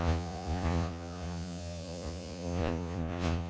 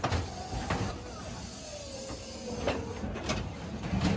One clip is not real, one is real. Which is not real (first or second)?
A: first